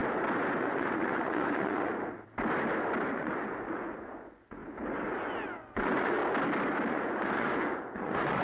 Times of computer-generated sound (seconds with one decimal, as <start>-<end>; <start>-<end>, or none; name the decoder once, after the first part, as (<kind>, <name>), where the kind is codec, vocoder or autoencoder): 0.6-1.9 (vocoder, Vocos); 3.1-4.6; 5.1-6.2; 6.9-8.4